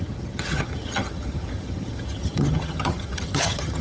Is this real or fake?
fake